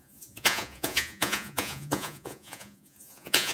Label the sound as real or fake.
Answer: fake